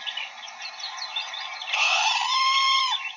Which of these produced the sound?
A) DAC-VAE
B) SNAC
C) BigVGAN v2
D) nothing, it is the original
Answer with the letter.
D